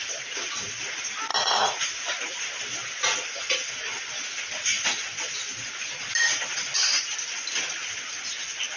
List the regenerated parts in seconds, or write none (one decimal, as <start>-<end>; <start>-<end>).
1.3-2.2